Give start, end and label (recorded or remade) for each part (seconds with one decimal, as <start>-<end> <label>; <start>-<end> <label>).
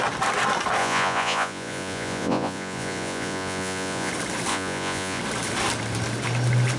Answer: 0.0-0.8 recorded; 0.8-4.1 remade; 4.1-4.5 recorded; 4.5-5.2 remade; 5.2-6.8 recorded